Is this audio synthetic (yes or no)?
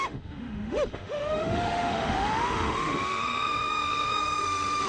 yes